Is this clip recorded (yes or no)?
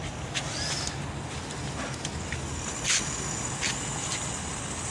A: yes